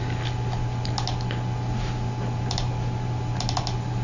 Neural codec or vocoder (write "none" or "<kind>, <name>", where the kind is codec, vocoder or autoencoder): none